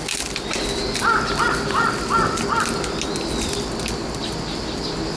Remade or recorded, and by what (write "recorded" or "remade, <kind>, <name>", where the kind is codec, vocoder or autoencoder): recorded